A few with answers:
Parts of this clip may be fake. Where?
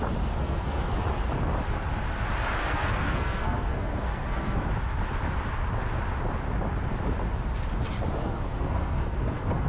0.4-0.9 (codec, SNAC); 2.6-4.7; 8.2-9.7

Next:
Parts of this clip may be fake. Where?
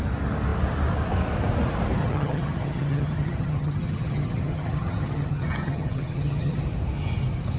2.0-6.6 (vocoder, HiFi-GAN)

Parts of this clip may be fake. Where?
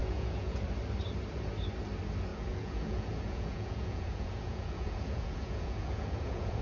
0.0-0.6 (vocoder, Vocos); 2.3-6.6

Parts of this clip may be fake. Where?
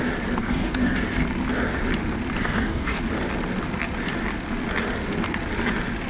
0.4-1.0 (codec, DAC); 2.4-3.0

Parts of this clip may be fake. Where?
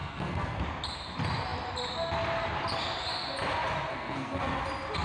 0.0-0.6 (codec, SNAC); 3.9-4.6